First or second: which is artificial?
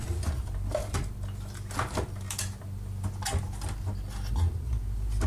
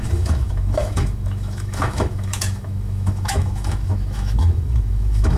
second